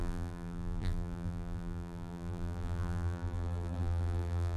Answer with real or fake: fake